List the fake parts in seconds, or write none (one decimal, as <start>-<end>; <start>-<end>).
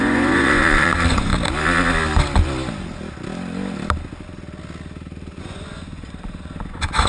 0.0-1.3; 5.4-7.1